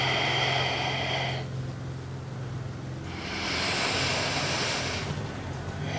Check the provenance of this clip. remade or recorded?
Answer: recorded